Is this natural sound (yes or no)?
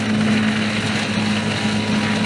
yes